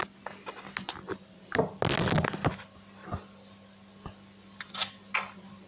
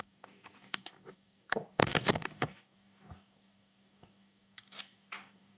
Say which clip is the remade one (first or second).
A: second